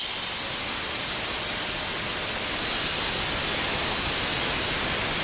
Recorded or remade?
recorded